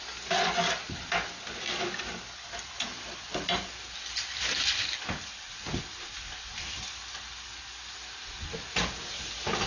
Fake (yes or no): no